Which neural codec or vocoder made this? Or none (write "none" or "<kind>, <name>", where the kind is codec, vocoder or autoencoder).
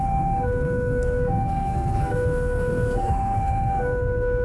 codec, SNAC